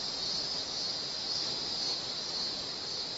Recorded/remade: recorded